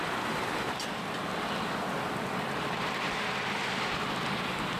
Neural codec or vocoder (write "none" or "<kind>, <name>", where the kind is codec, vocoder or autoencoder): none